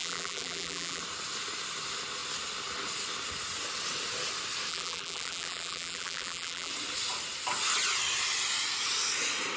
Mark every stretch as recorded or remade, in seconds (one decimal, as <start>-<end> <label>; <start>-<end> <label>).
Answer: 0.0-1.0 remade; 1.0-4.7 recorded; 4.7-6.7 remade; 6.7-9.6 recorded